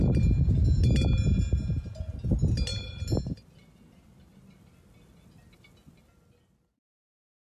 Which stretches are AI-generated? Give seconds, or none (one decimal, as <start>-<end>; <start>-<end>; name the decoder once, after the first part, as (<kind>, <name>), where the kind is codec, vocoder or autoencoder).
none

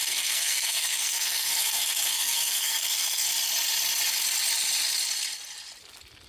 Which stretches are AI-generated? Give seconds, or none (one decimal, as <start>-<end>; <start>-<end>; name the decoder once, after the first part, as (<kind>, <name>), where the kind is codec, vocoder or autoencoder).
0.0-3.3 (codec, SNAC)

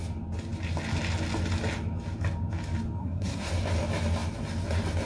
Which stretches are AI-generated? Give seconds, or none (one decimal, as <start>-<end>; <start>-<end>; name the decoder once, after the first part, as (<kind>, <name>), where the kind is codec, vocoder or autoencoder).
3.0-3.5 (codec, SNAC)

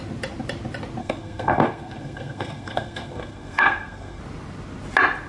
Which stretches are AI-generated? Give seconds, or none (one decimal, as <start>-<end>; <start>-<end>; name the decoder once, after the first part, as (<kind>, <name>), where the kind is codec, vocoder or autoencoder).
1.0-4.2 (codec, SNAC)

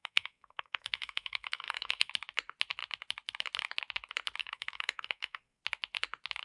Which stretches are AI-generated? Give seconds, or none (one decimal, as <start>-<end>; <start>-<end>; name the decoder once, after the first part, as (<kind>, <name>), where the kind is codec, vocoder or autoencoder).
0.0-2.1 (codec, SNAC); 4.4-5.6

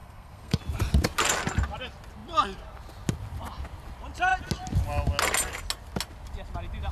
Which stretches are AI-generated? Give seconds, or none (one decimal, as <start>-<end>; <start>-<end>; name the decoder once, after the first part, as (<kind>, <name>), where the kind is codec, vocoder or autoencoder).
0.0-0.6 (codec, SNAC)

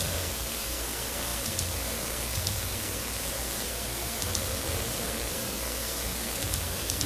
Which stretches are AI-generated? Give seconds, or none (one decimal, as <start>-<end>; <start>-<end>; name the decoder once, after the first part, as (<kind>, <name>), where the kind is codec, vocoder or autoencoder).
0.0-7.1 (codec, SNAC)

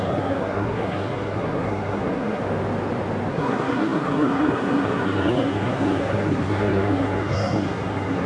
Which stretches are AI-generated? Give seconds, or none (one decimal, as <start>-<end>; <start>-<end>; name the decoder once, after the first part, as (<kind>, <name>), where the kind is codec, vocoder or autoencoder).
0.0-2.4 (codec, SNAC); 3.3-8.3